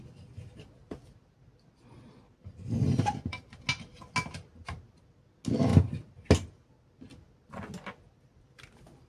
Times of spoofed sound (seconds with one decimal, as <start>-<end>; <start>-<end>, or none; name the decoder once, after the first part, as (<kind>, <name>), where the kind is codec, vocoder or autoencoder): 2.4-3.6 (vocoder, BigVGAN v2)